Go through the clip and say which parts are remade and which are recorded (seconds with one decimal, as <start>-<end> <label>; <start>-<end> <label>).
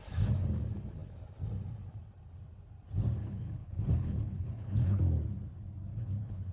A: 0.0-3.2 recorded; 3.2-5.0 remade; 5.0-5.9 recorded; 5.9-6.5 remade